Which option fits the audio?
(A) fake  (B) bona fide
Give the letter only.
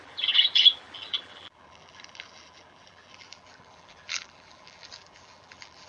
A